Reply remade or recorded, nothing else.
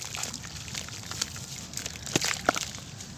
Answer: recorded